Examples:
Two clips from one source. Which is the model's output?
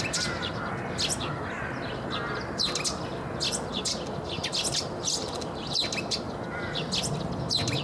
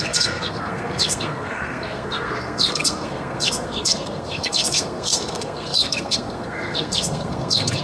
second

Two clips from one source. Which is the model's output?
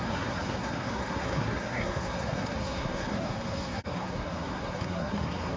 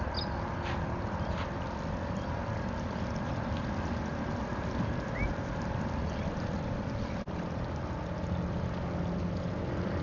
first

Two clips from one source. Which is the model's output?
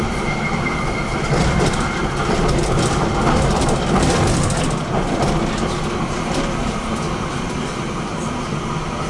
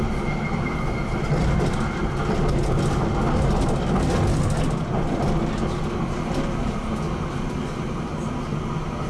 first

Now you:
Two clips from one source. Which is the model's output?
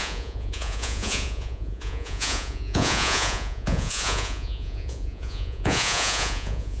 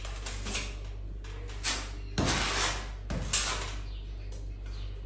first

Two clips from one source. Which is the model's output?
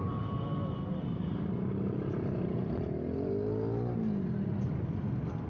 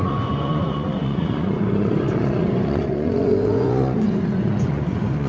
second